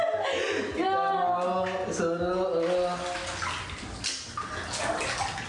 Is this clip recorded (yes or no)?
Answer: yes